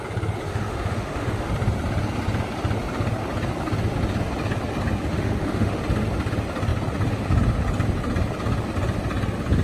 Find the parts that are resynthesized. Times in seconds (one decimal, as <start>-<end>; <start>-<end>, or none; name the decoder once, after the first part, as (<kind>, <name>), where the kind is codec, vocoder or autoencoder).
0.5-1.5 (autoencoder, DAC-VAE); 5.1-5.8